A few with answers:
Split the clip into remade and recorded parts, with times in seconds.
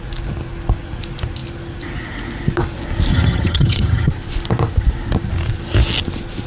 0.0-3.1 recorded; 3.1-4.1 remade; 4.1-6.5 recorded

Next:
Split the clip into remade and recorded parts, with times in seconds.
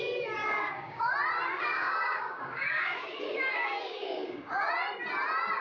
0.0-0.4 recorded; 0.4-1.1 remade; 1.1-1.5 recorded; 1.5-4.7 remade; 4.7-5.6 recorded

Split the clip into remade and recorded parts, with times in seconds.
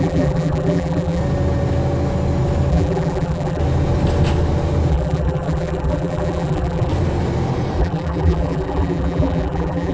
0.0-1.2 remade; 1.2-2.7 recorded; 2.7-3.6 remade; 3.6-4.9 recorded; 4.9-6.9 remade; 6.9-7.8 recorded; 7.8-9.9 remade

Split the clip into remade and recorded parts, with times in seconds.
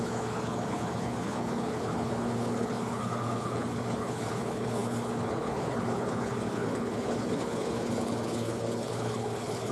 0.0-9.7 remade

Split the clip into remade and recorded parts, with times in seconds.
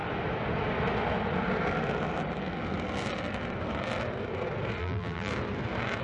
0.0-4.8 recorded; 4.8-5.3 remade; 5.3-6.0 recorded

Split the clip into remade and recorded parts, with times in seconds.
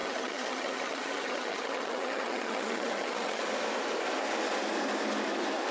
0.0-3.4 remade; 3.4-5.7 recorded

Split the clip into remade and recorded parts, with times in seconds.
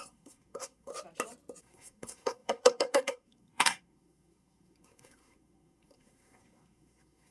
0.0-0.9 remade; 0.9-1.6 recorded; 1.6-7.3 remade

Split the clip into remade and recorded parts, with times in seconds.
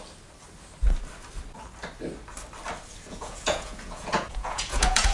0.0-3.1 recorded; 3.1-5.1 remade